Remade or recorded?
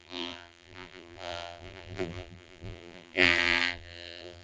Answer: remade